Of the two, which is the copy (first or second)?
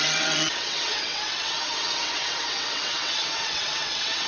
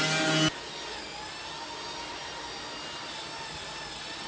first